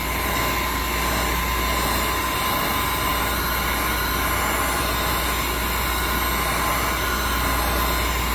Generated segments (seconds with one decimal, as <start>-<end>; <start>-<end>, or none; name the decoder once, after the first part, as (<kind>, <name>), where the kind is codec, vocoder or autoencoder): none